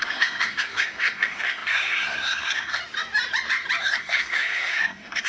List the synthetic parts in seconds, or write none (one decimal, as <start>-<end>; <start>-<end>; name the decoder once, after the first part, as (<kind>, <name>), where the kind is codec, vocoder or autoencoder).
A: 0.0-2.8 (codec, SNAC); 3.8-5.3